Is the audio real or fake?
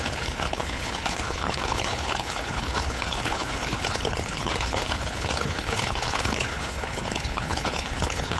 fake